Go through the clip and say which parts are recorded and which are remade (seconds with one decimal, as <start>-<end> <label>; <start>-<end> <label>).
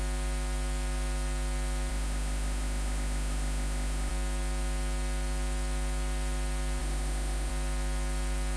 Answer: 0.0-1.9 recorded; 1.9-4.1 remade; 4.1-6.8 recorded; 6.8-7.5 remade; 7.5-8.6 recorded